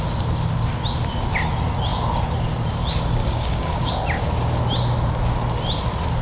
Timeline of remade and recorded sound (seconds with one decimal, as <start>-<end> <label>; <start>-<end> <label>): 0.0-3.2 recorded; 3.2-3.9 remade; 3.9-6.2 recorded